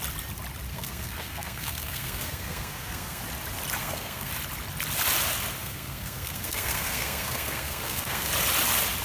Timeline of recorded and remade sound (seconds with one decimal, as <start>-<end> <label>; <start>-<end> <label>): 0.0-0.7 recorded; 0.7-3.2 remade; 3.2-3.8 recorded; 3.8-4.3 remade; 4.3-5.6 recorded; 5.6-8.3 remade; 8.3-9.0 recorded

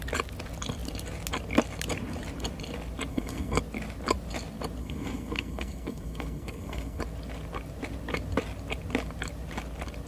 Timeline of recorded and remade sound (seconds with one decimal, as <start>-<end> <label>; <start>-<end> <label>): 0.0-3.1 recorded; 3.1-3.6 remade; 3.6-4.8 recorded; 4.8-7.0 remade; 7.0-10.1 recorded

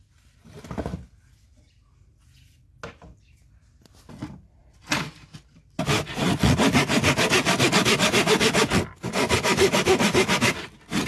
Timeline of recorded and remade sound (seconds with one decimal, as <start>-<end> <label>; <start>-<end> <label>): 0.0-11.1 recorded

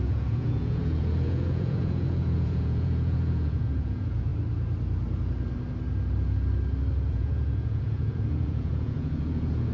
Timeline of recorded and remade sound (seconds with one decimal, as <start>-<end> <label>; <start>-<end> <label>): 0.0-4.3 remade; 4.3-7.1 recorded; 7.1-9.7 remade

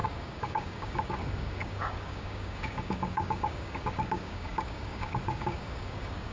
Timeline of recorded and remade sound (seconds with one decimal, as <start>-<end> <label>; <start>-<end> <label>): 0.0-6.3 remade

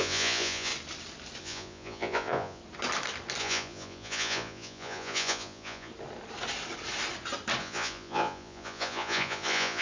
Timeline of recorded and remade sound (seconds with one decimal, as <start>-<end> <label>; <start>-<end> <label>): 0.0-0.7 remade; 0.7-1.4 recorded; 1.4-2.6 remade; 2.6-3.4 recorded; 3.4-5.9 remade; 5.9-7.6 recorded; 7.6-9.8 remade